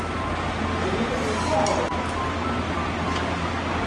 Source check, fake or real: real